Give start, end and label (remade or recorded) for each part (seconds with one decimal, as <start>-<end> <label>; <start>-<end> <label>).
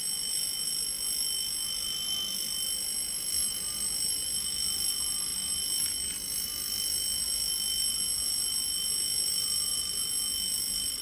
0.0-11.0 recorded